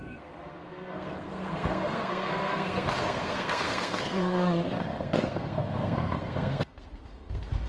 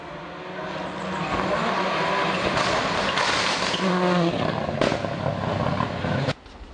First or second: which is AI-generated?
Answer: first